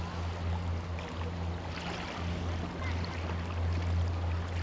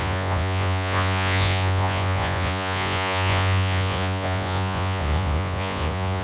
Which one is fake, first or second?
second